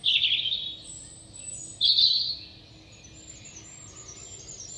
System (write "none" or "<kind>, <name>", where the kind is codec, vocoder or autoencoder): none